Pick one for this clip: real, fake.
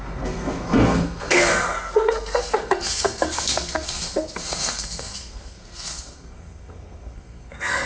fake